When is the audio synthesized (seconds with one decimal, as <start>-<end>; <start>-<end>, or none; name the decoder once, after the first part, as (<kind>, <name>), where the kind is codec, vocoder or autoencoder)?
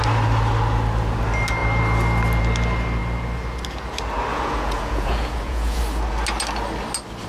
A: 4.3-5.8 (vocoder, Vocos)